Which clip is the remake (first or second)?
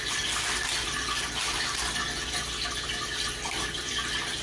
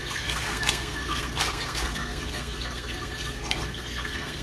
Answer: second